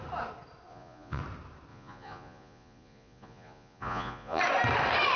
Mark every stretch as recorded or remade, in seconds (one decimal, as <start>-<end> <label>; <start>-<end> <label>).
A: 0.0-0.7 recorded; 0.7-1.2 remade; 1.2-1.7 recorded; 1.7-4.4 remade; 4.4-5.2 recorded